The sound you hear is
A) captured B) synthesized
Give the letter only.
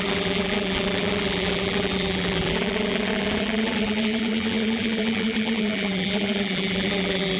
B